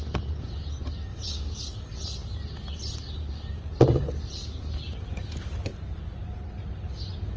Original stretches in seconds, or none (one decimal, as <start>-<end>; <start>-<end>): 0.0-1.1; 1.6-7.4